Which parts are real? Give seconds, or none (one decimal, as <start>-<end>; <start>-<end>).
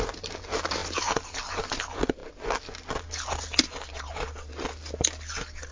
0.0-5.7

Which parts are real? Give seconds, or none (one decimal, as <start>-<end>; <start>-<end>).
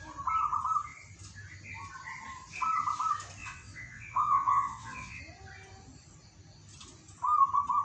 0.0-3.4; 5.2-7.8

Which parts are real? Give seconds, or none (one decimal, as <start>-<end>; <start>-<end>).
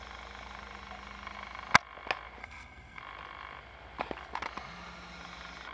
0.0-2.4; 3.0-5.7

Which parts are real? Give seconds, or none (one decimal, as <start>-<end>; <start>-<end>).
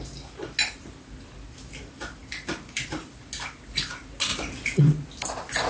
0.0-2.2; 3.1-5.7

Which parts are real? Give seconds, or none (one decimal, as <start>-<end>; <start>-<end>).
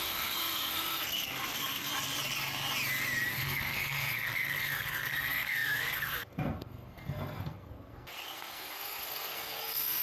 1.9-3.3